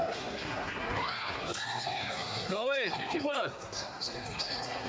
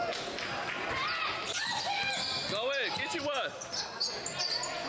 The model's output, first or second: first